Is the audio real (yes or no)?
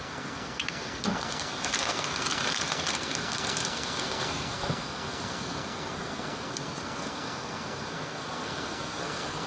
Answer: no